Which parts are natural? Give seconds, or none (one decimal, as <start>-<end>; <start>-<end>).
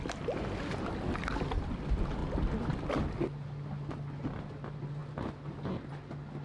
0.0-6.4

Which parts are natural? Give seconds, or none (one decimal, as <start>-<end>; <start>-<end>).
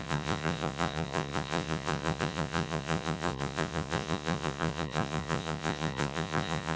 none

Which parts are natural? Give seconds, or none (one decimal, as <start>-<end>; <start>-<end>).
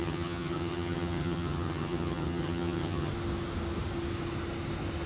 3.1-5.1